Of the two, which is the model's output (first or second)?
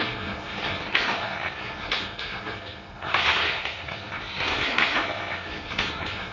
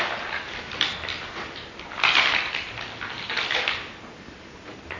first